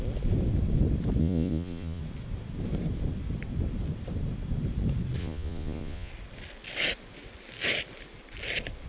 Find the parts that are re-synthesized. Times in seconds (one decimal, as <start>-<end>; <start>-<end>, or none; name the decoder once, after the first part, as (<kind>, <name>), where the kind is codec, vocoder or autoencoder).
1.2-2.0 (vocoder, Vocos); 5.2-6.1